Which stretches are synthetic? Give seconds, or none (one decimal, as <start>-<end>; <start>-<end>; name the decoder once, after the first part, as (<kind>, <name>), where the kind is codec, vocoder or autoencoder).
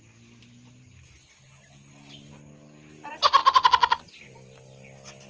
none